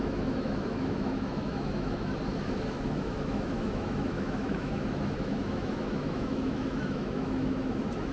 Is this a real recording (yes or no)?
no